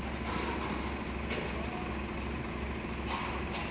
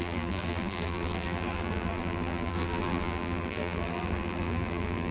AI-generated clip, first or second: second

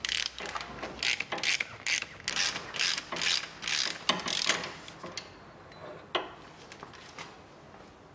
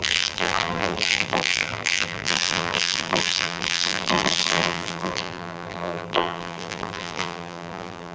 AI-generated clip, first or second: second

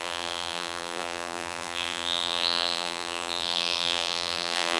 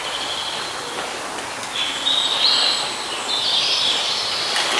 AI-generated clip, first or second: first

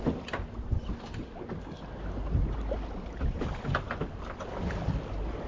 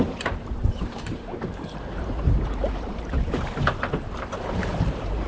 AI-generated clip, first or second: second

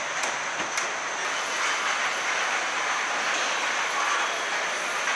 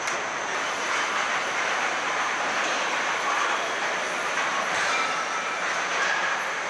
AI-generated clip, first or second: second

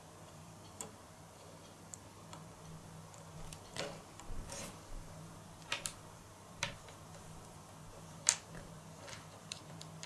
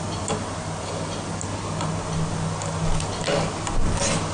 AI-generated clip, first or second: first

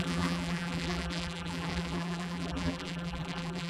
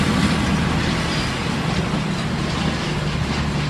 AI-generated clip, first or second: first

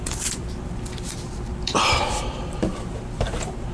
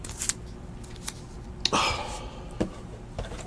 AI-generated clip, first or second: first